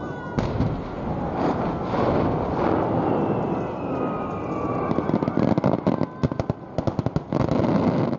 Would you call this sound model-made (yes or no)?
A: no